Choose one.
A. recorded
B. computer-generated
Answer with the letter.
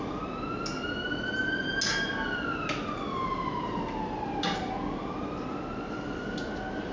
A